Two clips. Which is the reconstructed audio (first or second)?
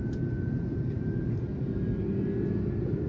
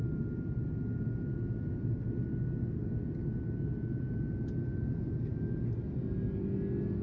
first